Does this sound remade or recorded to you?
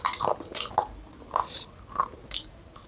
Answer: recorded